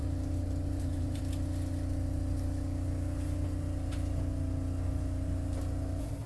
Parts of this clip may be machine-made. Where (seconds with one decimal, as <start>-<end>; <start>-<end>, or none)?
0.0-1.2